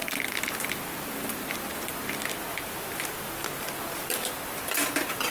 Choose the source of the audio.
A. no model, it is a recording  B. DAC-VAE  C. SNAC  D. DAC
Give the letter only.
A